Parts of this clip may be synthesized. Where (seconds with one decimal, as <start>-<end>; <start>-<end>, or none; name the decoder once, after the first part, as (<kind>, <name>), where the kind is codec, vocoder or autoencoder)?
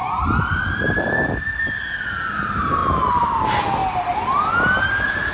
0.0-2.4 (vocoder, BigVGAN v2); 2.8-3.4; 3.8-4.5